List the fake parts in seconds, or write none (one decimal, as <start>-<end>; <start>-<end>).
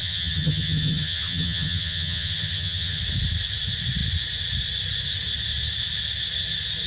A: 0.0-3.0